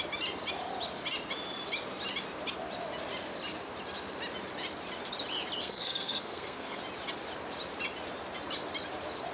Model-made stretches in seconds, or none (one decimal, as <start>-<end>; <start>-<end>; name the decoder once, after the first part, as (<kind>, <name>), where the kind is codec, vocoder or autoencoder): 5.6-6.8 (codec, SNAC)